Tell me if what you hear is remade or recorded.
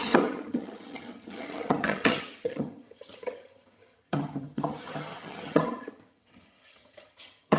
remade